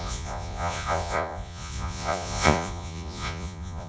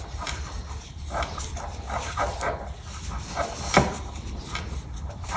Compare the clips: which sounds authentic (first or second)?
second